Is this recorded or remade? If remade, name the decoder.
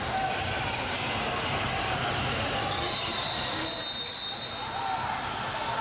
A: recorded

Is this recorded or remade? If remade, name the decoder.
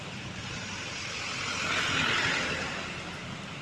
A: recorded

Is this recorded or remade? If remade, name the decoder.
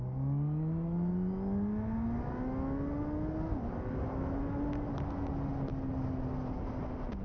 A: recorded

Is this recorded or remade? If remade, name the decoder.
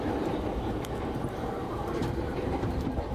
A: remade, vocoder, BigVGAN v2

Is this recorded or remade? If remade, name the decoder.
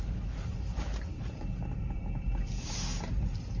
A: remade, vocoder, BigVGAN v2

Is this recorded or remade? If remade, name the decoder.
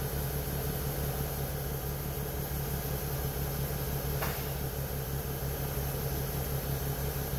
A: recorded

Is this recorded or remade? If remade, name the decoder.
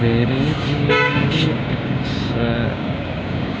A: remade, codec, DAC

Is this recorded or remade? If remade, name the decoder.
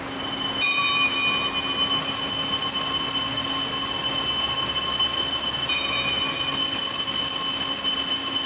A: recorded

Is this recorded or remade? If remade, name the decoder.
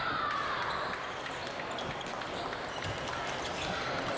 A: recorded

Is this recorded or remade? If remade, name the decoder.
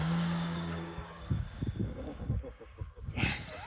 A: remade, codec, DAC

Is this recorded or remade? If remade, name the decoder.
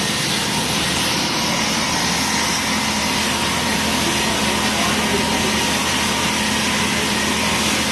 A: recorded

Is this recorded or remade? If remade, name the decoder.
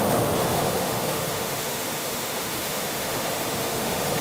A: remade, autoencoder, DAC-VAE